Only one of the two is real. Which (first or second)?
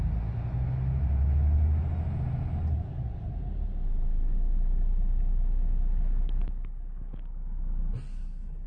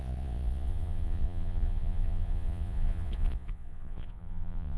first